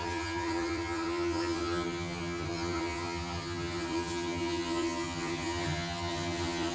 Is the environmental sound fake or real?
fake